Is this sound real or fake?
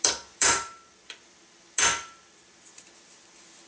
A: fake